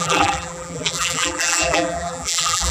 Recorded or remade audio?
remade